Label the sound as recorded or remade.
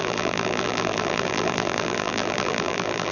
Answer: remade